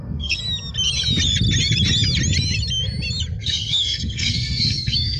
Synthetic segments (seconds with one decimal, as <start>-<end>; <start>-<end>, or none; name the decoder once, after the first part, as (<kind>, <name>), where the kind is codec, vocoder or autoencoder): 0.0-0.4 (codec, SNAC); 3.4-5.2

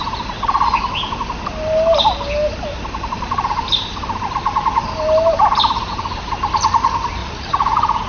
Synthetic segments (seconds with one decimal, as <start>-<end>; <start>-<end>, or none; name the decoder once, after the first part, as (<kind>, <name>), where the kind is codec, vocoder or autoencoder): 7.2-8.1 (vocoder, Vocos)

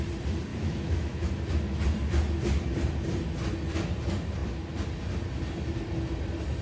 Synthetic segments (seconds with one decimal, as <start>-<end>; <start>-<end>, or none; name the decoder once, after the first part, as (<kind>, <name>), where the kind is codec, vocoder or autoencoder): 0.5-1.3 (autoencoder, DAC-VAE)

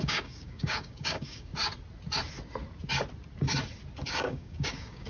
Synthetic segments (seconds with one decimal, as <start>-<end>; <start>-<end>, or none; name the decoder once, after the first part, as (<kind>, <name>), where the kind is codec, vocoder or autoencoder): 0.0-1.5 (codec, DAC); 4.1-5.1

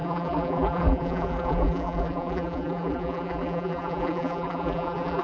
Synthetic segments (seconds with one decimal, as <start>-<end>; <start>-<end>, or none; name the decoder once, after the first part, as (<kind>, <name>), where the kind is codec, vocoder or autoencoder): 0.0-5.2 (vocoder, BigVGAN v2)